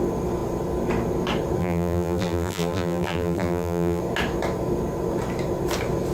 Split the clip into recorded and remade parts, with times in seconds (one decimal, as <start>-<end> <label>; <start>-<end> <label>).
0.0-1.6 recorded; 1.6-4.0 remade; 4.0-6.1 recorded